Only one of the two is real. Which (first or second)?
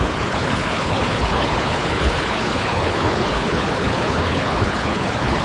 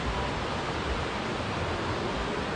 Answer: second